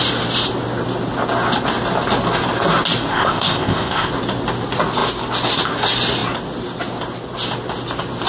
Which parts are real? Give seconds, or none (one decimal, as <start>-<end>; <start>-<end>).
0.0-3.1; 4.1-8.3